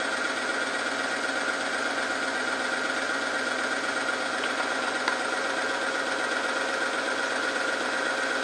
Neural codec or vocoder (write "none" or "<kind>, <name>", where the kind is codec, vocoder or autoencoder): vocoder, Vocos